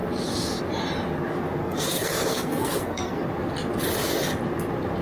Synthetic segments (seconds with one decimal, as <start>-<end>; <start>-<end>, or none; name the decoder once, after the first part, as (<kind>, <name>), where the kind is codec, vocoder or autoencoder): 1.6-3.2 (codec, SNAC)